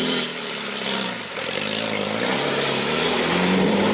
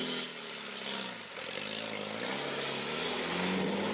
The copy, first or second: first